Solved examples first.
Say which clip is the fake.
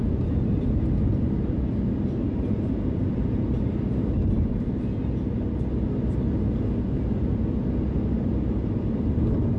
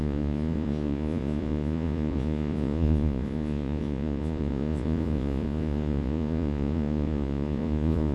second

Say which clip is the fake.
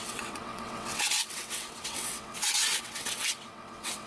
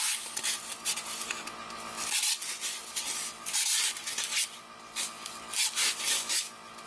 first